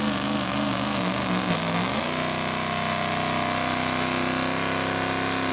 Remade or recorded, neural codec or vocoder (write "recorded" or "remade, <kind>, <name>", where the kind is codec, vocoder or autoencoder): recorded